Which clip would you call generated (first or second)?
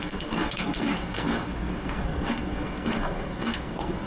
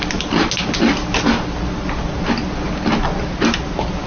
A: first